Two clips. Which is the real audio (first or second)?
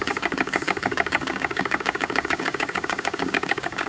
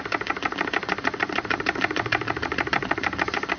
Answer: second